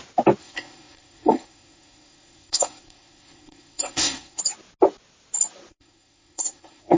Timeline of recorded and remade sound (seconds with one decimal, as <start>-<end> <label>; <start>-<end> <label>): 0.0-0.4 recorded; 0.4-4.4 remade; 4.4-5.7 recorded; 5.7-7.0 remade